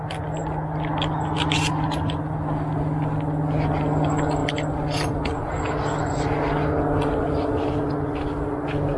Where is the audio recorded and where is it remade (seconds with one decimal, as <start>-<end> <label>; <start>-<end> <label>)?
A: 0.0-9.0 recorded